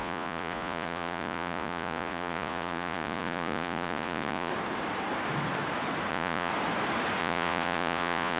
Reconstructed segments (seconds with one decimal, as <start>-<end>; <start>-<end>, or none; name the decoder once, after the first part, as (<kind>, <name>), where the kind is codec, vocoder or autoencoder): 0.0-4.5 (vocoder, Vocos); 6.1-6.5; 7.2-8.4